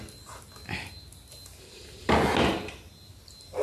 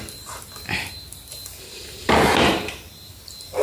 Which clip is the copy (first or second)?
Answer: second